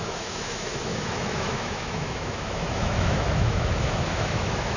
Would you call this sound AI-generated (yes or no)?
yes